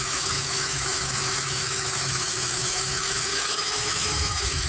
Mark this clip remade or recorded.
remade